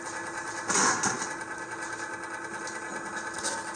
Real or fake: real